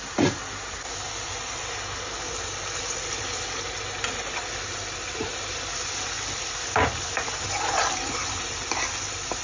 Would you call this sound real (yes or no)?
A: yes